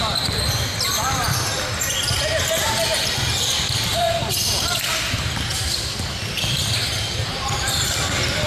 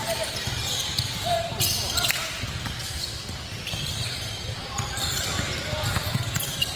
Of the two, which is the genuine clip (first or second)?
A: first